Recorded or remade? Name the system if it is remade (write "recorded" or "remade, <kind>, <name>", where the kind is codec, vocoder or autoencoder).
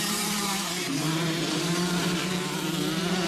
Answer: remade, vocoder, BigVGAN v2